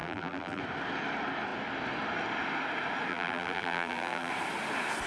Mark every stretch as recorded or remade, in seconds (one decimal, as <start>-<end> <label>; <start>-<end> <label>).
0.0-0.6 remade; 0.6-3.1 recorded; 3.1-4.3 remade; 4.3-5.1 recorded